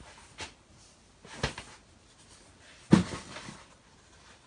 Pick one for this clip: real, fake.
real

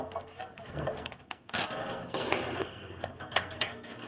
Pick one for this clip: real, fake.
fake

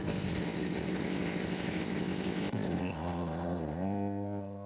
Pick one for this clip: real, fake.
fake